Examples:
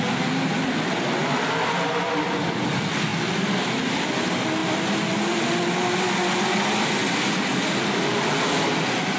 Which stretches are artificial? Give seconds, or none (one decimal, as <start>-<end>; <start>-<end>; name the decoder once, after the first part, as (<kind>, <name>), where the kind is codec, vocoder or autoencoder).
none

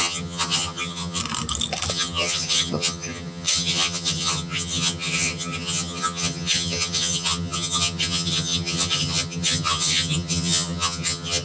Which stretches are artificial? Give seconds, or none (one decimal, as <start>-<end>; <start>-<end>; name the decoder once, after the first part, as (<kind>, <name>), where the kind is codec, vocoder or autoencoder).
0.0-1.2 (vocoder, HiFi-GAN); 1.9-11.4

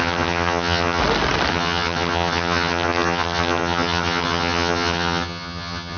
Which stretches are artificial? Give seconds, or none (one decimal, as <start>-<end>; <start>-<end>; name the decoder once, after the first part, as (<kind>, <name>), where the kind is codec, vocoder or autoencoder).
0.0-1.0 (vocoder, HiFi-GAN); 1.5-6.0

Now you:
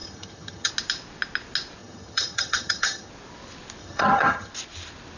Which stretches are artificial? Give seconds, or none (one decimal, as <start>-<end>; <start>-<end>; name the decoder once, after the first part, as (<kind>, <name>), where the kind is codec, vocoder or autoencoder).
0.0-0.7 (vocoder, HiFi-GAN); 1.8-3.1; 3.8-4.5